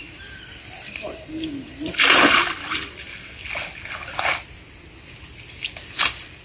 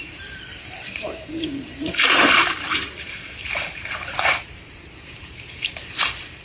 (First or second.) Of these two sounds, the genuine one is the first